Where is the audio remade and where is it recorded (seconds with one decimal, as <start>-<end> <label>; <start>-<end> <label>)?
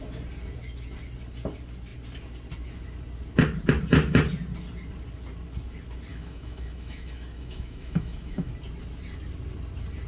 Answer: 0.0-6.1 recorded; 6.1-8.5 remade; 8.5-10.1 recorded